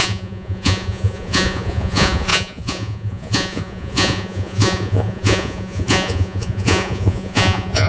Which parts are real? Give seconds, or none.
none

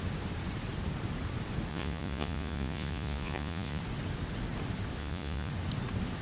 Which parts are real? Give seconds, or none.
0.0-1.7; 3.8-5.0; 5.5-6.2

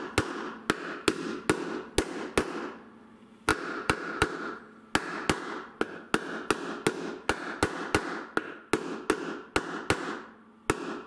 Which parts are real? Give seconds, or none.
0.0-3.5; 4.6-11.1